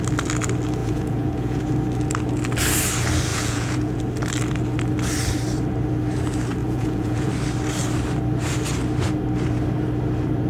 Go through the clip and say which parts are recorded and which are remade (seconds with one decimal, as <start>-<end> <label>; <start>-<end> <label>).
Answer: 0.0-0.8 recorded; 0.8-1.6 remade; 1.6-3.3 recorded; 3.3-4.0 remade; 4.0-6.6 recorded; 6.6-7.3 remade; 7.3-10.5 recorded